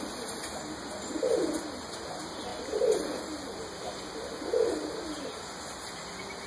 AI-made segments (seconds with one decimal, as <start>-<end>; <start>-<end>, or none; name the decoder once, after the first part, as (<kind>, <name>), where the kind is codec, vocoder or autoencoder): none